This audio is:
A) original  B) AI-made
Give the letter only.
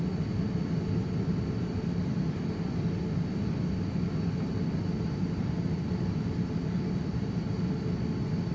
A